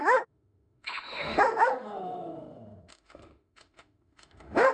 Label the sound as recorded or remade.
remade